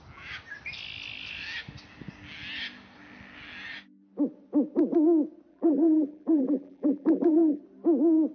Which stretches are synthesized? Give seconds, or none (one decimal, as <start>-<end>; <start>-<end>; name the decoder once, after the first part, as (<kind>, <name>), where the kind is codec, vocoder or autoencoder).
5.5-7.6 (vocoder, BigVGAN v2)